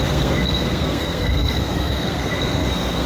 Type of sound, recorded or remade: remade